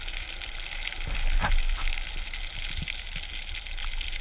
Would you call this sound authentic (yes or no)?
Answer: yes